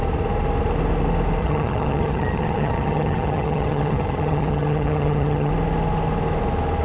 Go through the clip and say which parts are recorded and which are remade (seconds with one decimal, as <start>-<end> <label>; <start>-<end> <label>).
0.0-1.4 recorded; 1.4-5.5 remade; 5.5-6.8 recorded